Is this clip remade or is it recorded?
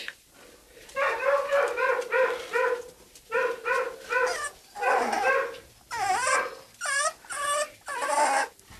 recorded